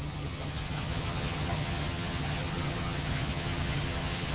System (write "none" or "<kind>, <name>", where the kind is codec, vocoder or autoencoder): vocoder, HiFi-GAN